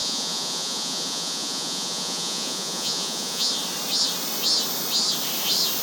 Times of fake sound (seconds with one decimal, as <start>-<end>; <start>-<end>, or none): 0.0-3.5